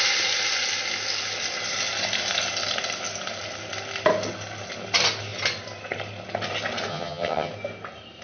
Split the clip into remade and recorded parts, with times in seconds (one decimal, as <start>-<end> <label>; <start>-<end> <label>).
0.0-6.9 recorded; 6.9-7.5 remade; 7.5-8.2 recorded